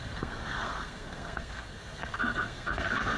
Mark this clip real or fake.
fake